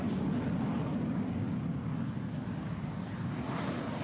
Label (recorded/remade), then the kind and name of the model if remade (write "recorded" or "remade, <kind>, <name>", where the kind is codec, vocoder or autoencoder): recorded